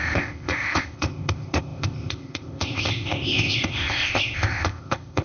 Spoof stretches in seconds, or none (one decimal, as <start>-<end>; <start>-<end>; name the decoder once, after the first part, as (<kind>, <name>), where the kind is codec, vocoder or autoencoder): 0.0-5.2 (codec, ZipCodec)